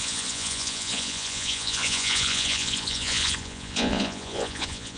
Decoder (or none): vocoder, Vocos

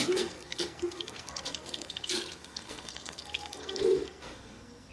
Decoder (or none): codec, SNAC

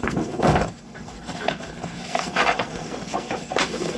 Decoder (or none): codec, SNAC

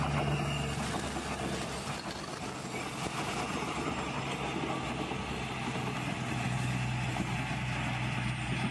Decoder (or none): none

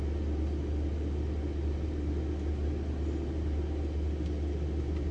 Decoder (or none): none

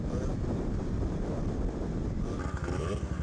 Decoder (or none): none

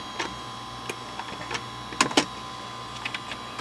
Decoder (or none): none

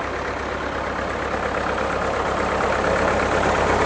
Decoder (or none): none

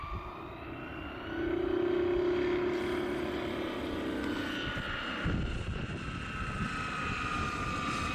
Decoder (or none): none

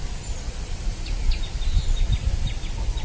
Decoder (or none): none